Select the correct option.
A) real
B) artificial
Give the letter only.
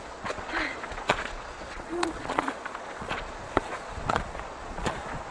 B